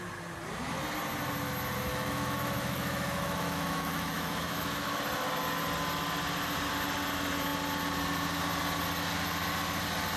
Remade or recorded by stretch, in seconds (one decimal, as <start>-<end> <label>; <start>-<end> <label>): 0.0-1.9 recorded; 1.9-5.0 remade; 5.0-10.2 recorded